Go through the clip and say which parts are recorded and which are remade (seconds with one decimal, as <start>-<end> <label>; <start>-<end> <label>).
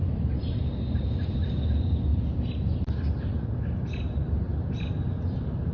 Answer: 0.0-5.7 recorded